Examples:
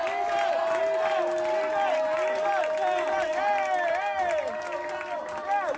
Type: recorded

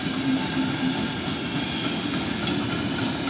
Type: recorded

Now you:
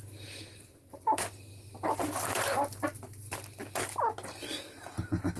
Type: recorded